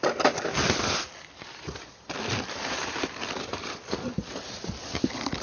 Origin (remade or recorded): recorded